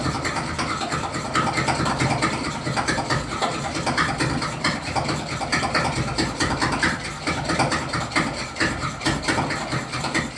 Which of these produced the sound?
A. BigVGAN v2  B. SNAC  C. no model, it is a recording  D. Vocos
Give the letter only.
C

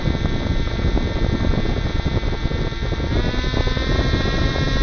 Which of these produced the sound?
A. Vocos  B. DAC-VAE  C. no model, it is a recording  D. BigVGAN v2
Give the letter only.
D